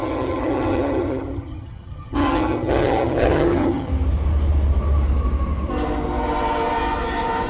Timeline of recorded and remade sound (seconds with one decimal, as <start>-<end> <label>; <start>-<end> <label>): 0.0-3.9 remade; 3.9-7.5 recorded